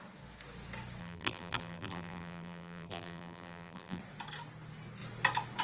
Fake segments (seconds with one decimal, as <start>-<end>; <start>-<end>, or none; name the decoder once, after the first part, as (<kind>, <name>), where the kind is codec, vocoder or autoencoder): 1.0-4.0 (vocoder, BigVGAN v2)